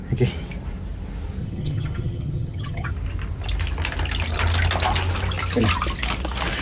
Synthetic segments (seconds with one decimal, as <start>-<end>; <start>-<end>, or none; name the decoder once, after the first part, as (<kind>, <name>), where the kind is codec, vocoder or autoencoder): 1.4-2.9 (vocoder, HiFi-GAN)